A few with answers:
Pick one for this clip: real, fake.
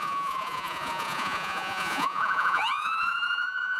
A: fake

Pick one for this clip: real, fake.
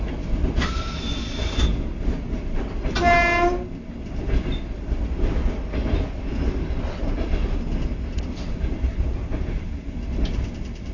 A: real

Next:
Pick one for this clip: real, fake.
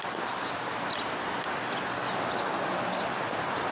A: real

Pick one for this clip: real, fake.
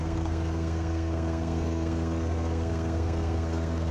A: fake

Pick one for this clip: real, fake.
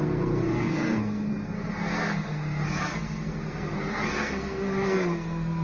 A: fake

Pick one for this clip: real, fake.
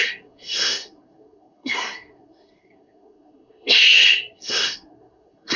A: fake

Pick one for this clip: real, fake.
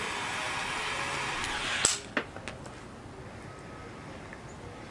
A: real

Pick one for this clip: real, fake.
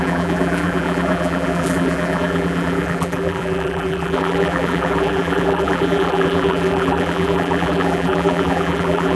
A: fake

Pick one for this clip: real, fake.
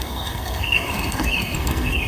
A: fake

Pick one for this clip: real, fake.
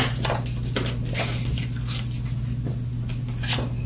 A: real